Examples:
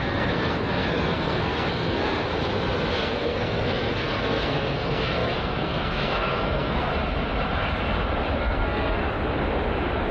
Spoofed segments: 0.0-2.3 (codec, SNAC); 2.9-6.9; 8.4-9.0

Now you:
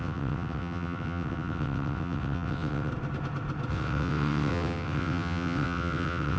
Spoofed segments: 0.0-2.9 (vocoder, WaveNeXt); 3.7-6.4

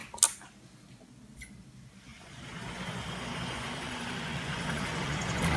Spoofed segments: 2.1-5.6 (vocoder, Vocos)

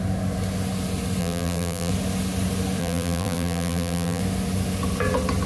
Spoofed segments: 1.2-1.9 (vocoder, BigVGAN v2); 2.8-4.2

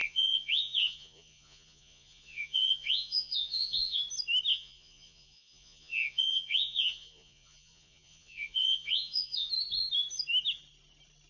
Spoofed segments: 0.0-4.0 (vocoder, Vocos); 4.5-9.5

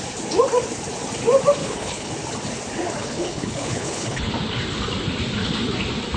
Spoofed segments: 1.6-2.1 (codec, HILCodec); 3.0-4.3

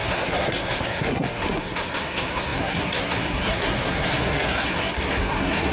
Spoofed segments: 0.0-5.7 (codec, SNAC)

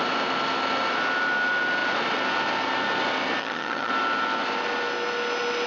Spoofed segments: 3.4-3.9 (vocoder, HiFi-GAN)